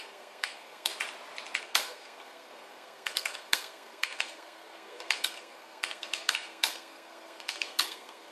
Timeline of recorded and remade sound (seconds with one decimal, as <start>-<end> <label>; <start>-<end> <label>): 0.0-0.9 remade; 0.9-1.6 recorded; 1.6-8.3 remade